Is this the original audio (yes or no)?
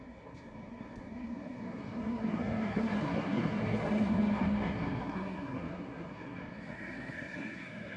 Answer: no